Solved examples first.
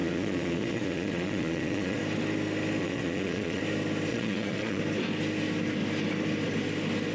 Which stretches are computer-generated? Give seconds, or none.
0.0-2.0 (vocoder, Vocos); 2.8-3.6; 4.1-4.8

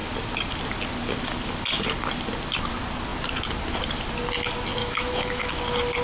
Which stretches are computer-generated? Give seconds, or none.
4.8-5.6 (autoencoder, DAC-VAE)

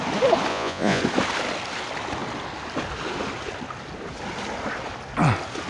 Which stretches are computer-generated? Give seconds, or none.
0.5-1.0 (vocoder, Vocos)

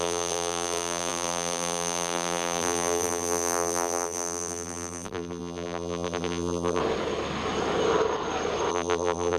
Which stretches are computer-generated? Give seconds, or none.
0.0-6.8 (vocoder, BigVGAN v2); 8.7-9.4

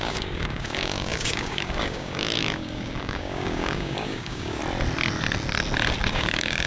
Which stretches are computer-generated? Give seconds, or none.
0.0-4.6 (codec, DAC); 6.1-6.7